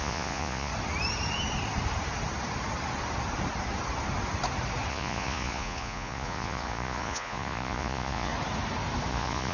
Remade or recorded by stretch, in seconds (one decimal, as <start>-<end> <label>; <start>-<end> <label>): 0.0-0.7 remade; 0.7-4.9 recorded; 4.9-8.3 remade; 8.3-9.1 recorded; 9.1-9.5 remade